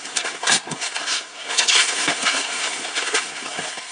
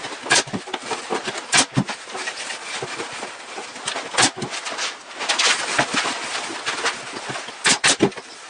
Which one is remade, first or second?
first